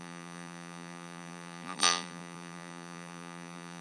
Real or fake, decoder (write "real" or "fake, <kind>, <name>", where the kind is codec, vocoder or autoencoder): fake, vocoder, BigVGAN v2